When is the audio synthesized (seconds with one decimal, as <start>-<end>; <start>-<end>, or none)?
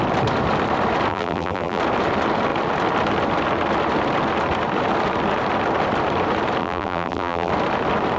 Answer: 1.1-1.8; 6.6-7.5